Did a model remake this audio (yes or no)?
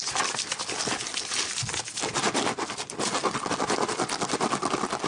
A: no